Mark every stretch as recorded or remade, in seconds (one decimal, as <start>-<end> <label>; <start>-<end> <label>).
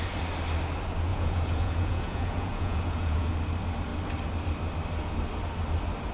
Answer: 0.0-1.1 recorded; 1.1-3.3 remade; 3.3-6.1 recorded